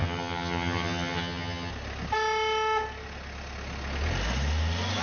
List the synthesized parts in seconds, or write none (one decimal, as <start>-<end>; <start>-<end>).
0.0-1.7